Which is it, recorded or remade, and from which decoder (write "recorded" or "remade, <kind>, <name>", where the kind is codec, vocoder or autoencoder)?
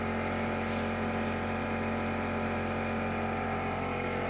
recorded